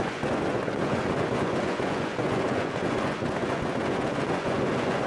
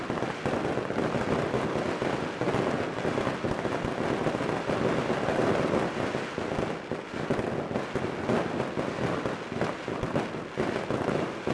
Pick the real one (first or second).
second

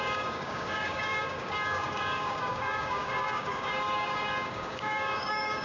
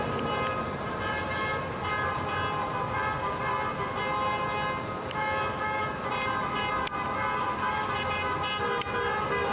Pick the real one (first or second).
second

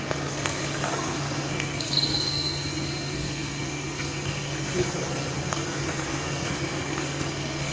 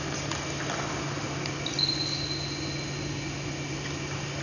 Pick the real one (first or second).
second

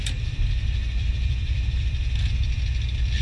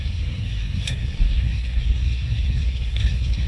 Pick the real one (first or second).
first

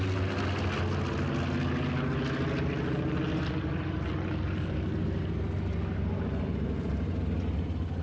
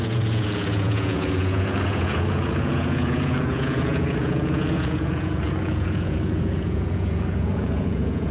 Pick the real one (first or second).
first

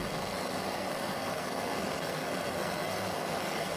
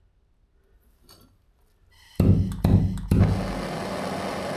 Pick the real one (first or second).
second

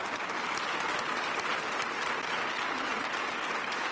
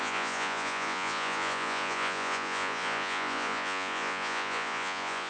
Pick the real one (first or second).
first